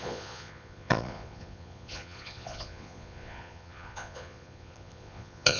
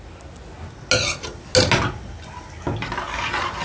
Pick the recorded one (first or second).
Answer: second